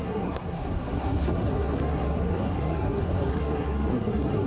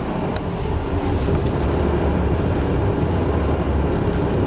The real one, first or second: second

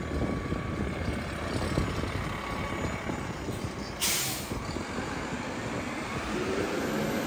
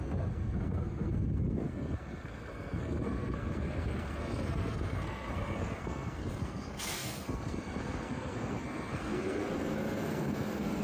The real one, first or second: first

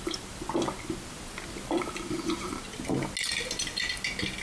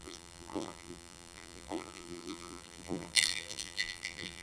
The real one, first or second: first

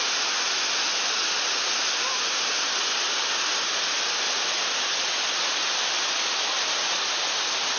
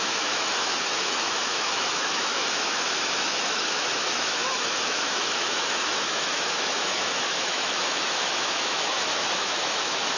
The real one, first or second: first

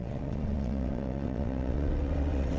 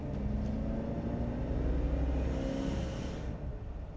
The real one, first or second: second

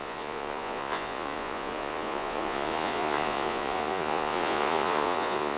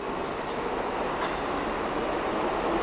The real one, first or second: second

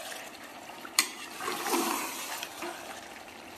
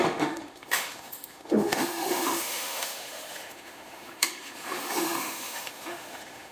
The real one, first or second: first